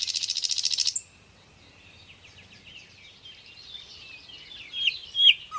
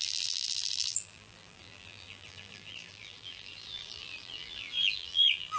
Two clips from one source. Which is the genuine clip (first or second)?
first